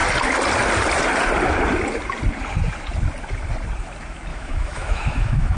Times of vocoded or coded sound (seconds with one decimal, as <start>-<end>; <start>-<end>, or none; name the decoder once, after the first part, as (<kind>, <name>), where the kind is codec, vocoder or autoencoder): 4.3-5.6 (autoencoder, DAC-VAE)